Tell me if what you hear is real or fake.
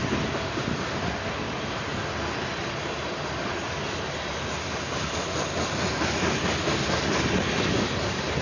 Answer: real